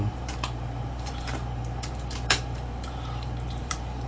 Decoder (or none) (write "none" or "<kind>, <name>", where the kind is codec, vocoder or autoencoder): vocoder, BigVGAN v2